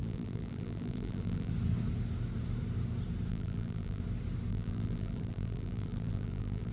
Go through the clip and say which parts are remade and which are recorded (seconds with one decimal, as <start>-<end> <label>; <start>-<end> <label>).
0.0-1.5 remade; 1.5-3.3 recorded; 3.3-4.0 remade; 4.0-4.5 recorded; 4.5-6.7 remade